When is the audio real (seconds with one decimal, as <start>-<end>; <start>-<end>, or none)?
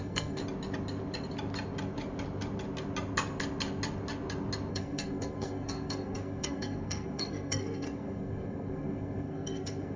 0.4-4.7